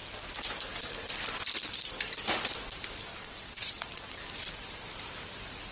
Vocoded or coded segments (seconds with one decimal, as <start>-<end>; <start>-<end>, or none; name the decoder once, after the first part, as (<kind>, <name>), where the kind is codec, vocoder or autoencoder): 3.1-4.2 (vocoder, WaveNeXt)